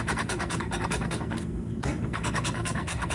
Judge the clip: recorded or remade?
remade